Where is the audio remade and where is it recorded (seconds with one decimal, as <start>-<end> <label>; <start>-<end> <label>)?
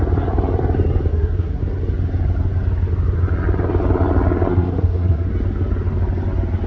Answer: 0.0-1.1 recorded; 1.1-1.6 remade; 1.6-4.5 recorded; 4.5-5.3 remade; 5.3-6.7 recorded